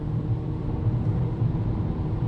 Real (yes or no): no